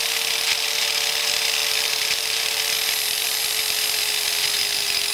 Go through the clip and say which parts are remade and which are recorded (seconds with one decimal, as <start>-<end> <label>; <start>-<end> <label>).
0.0-1.6 recorded; 1.6-3.6 remade; 3.6-5.1 recorded

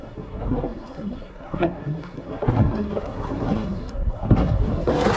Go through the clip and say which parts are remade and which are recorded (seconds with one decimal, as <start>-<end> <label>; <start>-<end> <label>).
0.0-5.2 remade

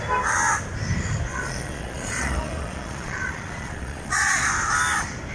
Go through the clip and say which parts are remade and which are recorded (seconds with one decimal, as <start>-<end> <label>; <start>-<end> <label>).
0.0-1.3 recorded; 1.3-4.5 remade; 4.5-5.3 recorded